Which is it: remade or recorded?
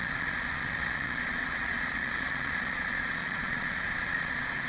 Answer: remade